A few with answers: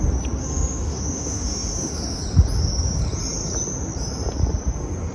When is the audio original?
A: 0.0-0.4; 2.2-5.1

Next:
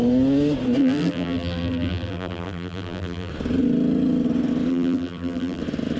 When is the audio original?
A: 0.0-0.8; 3.3-4.7; 5.6-6.0

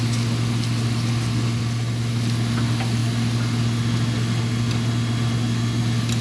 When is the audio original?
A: 0.0-6.2

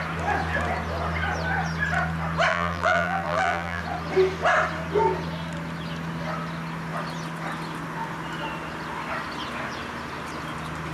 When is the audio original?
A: 0.0-2.5; 3.8-10.9

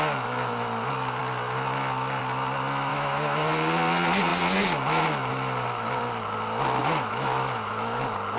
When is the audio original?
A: 0.0-2.9; 3.5-6.8; 8.0-8.4

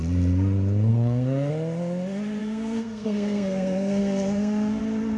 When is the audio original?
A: 0.0-0.9; 1.5-2.4; 4.8-5.2

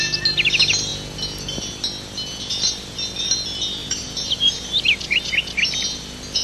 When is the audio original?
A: 0.0-3.8; 5.3-6.4

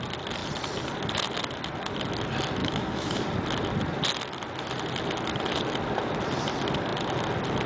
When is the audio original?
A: 0.0-2.6; 3.2-7.7